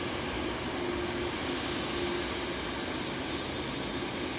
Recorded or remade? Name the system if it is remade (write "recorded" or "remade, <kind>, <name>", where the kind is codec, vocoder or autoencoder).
recorded